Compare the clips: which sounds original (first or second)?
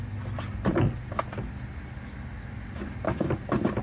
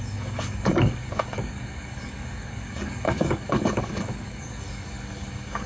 first